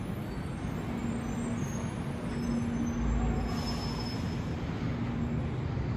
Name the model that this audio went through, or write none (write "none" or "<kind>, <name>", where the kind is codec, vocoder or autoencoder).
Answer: none